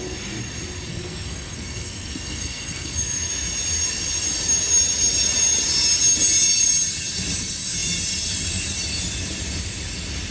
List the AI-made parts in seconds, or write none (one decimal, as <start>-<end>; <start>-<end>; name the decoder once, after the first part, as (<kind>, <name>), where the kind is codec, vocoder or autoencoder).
0.9-3.3 (codec, SNAC)